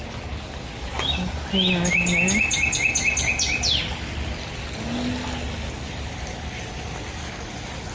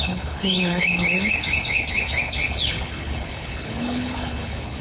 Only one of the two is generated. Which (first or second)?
second